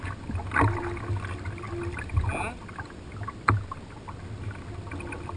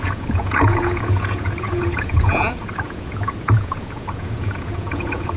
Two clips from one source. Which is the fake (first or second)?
second